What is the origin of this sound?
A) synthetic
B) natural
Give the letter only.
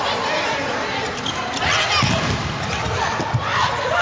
B